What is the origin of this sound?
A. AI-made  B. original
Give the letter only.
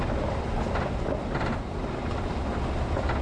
B